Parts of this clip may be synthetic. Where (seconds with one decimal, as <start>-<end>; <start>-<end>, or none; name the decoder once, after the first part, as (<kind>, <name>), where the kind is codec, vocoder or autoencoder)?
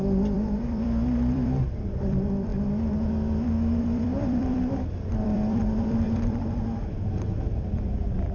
0.0-2.5 (vocoder, BigVGAN v2); 3.8-8.3